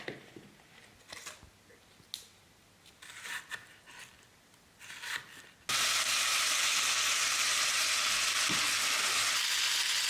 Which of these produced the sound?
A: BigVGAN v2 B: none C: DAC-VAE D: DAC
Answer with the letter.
B